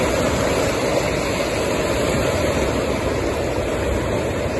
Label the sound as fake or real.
real